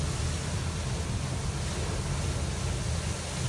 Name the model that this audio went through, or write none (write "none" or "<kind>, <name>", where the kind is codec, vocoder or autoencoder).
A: none